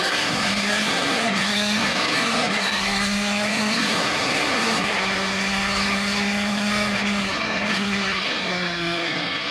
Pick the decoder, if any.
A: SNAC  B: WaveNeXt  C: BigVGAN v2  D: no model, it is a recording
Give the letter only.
A